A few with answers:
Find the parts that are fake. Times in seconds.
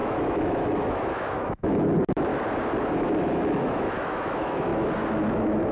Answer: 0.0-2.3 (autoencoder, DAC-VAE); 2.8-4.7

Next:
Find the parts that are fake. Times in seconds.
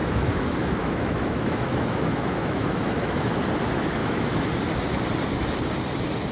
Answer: 0.0-3.4 (autoencoder, DAC-VAE); 4.0-4.5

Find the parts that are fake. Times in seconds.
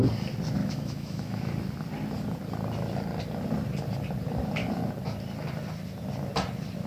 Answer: 0.6-1.5 (autoencoder, DAC-VAE)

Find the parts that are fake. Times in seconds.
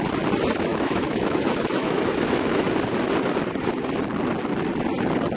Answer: 0.7-2.6 (autoencoder, DAC-VAE)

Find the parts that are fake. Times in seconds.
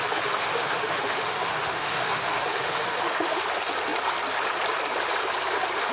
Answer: 0.0-3.4 (autoencoder, DAC-VAE)